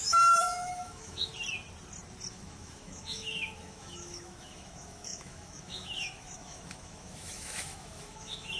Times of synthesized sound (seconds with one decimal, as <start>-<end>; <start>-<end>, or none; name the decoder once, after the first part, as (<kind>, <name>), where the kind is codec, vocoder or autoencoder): 0.0-1.3 (autoencoder, DAC-VAE); 2.3-8.6